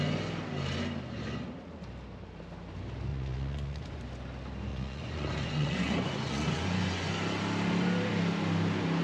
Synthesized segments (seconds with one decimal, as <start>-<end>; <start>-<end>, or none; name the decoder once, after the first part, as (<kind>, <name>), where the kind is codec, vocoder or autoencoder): 3.1-4.0 (vocoder, Vocos); 4.7-7.1